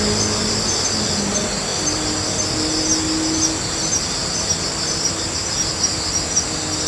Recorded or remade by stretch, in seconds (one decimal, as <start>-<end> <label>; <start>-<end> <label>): 0.0-6.9 recorded